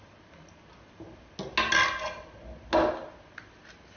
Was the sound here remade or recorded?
recorded